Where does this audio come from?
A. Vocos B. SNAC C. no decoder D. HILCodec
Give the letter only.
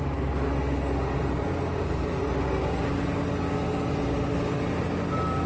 C